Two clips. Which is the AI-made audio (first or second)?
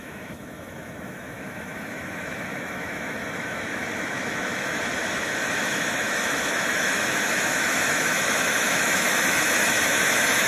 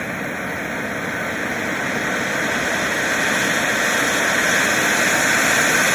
first